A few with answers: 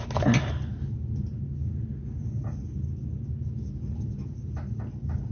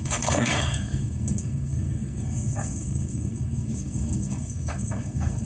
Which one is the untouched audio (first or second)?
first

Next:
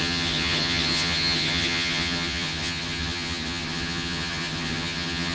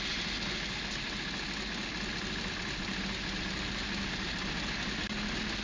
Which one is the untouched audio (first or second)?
second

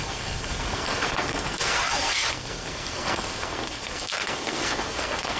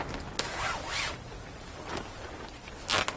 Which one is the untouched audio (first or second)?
second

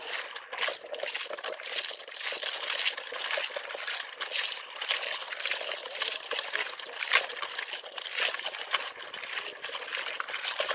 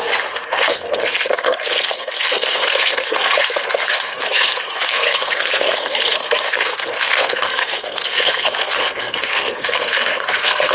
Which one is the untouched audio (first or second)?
first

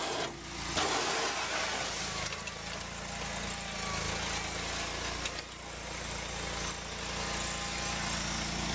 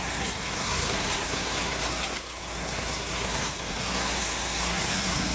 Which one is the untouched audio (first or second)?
first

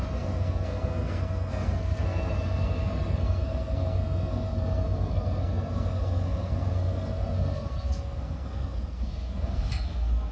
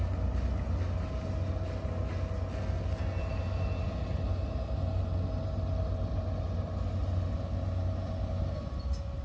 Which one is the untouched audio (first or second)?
second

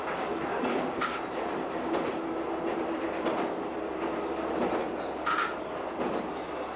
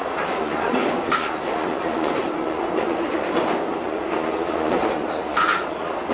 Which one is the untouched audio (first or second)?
first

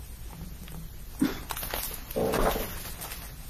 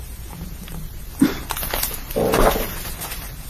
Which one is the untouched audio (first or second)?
first